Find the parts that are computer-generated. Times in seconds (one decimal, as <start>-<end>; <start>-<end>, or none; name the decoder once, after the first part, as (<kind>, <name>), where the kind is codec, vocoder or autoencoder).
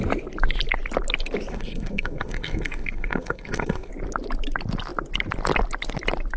1.5-3.9 (codec, SNAC)